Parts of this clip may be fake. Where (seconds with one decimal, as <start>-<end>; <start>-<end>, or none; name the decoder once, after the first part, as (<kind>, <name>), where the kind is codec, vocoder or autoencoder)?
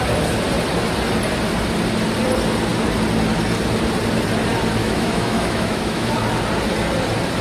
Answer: 4.8-6.1 (autoencoder, DAC-VAE)